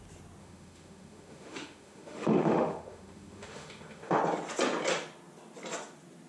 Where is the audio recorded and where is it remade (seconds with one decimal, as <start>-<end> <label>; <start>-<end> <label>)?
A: 0.0-0.4 recorded; 0.4-4.2 remade; 4.2-6.3 recorded